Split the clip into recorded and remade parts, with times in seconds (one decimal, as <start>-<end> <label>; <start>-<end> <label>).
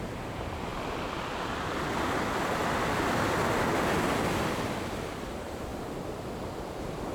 0.0-0.7 remade; 0.7-4.5 recorded; 4.5-5.7 remade; 5.7-6.6 recorded; 6.6-7.1 remade